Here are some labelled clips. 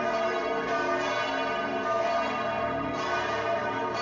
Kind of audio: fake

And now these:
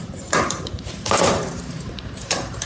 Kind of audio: fake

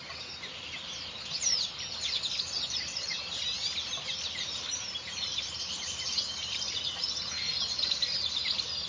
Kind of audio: fake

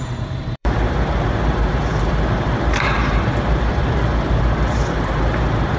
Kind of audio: fake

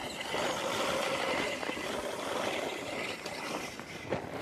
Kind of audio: real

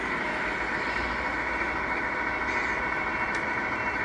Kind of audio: real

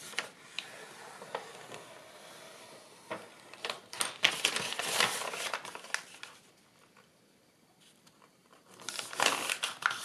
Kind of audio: fake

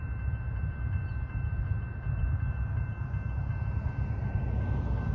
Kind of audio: real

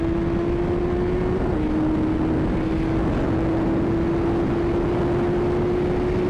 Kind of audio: real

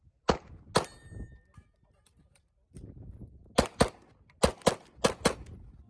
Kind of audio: real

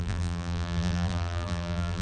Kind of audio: fake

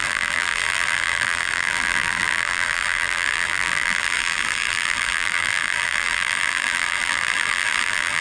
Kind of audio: fake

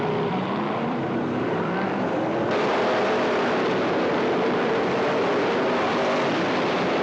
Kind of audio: fake